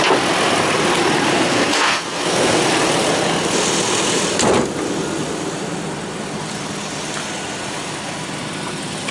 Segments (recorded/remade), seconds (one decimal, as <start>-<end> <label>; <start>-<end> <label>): 0.0-1.3 recorded; 1.3-2.6 remade; 2.6-9.1 recorded